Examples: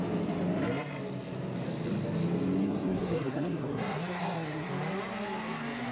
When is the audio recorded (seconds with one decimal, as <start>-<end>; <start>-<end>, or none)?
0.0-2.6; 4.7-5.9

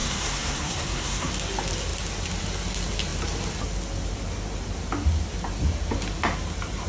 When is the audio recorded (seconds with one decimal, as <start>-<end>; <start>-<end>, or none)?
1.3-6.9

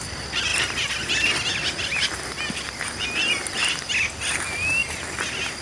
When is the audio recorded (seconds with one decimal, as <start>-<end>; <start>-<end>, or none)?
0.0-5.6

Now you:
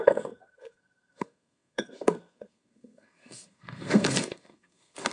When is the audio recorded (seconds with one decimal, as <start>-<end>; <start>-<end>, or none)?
none

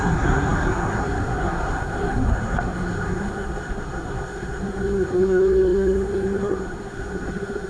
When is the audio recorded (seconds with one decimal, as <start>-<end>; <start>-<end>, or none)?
none